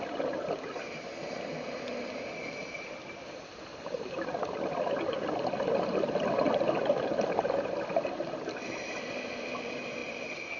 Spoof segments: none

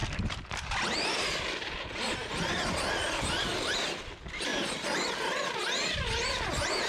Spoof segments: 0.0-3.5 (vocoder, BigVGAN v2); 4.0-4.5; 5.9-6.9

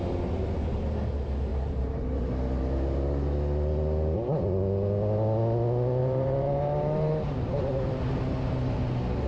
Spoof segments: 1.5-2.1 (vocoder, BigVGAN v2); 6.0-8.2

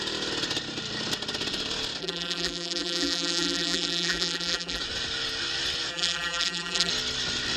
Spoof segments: 2.0-4.8 (vocoder, BigVGAN v2); 5.9-6.9

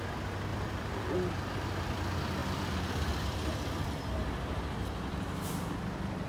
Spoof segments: 0.5-1.1 (vocoder, BigVGAN v2); 2.4-6.3